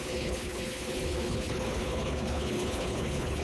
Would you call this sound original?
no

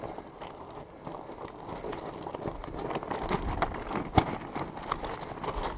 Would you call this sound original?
yes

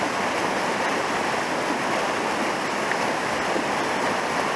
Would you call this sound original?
yes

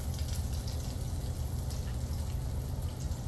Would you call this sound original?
yes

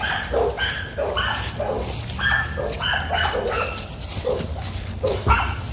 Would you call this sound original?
yes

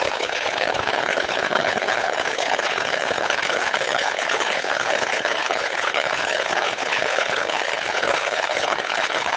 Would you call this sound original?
no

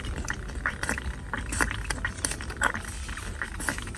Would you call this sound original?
yes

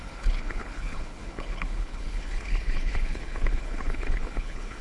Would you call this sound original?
no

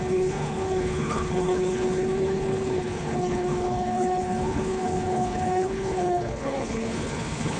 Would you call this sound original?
no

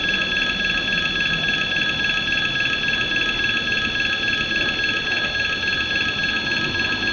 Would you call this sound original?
yes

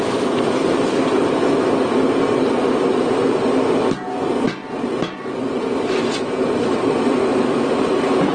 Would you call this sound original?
yes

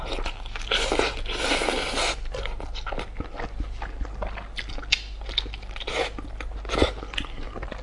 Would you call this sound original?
yes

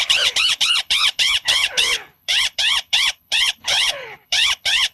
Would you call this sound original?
no